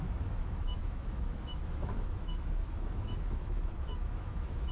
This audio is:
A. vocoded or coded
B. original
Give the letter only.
A